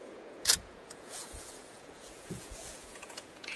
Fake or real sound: fake